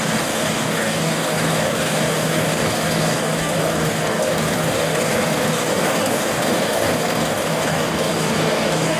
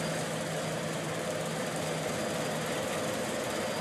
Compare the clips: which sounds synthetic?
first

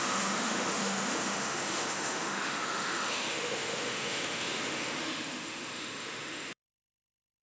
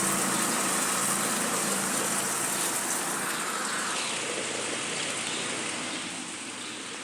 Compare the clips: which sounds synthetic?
first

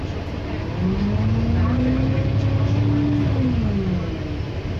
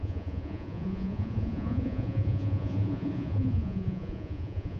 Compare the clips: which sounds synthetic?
second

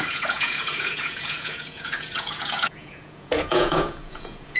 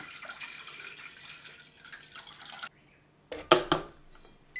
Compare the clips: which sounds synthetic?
first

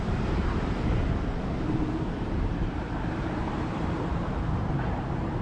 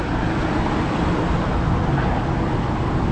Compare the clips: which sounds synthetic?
first